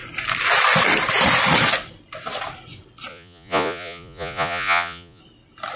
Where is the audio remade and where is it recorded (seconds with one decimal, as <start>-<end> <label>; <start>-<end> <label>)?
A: 0.0-3.1 recorded; 3.1-5.2 remade; 5.2-5.8 recorded